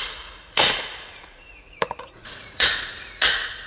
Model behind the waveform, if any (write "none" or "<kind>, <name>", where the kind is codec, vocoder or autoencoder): vocoder, Vocos